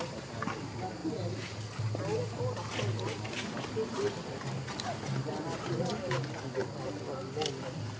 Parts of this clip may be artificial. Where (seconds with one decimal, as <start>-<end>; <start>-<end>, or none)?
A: none